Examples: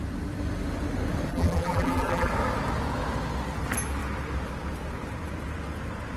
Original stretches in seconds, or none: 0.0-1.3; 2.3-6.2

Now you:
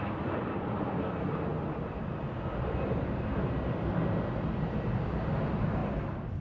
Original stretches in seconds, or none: 0.0-6.4

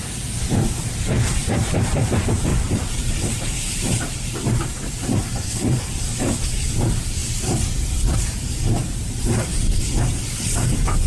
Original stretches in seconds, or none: 7.2-8.1

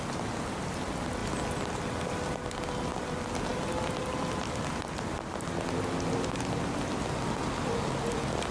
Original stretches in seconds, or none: 0.0-8.5

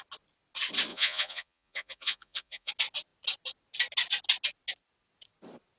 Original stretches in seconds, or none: 0.0-0.9; 2.7-5.8

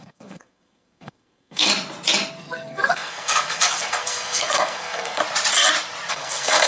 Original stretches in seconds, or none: 1.7-2.4; 5.2-6.1